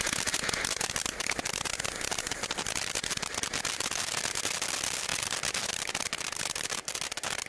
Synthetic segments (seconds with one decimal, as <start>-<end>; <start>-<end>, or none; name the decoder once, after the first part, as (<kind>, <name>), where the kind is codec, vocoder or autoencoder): none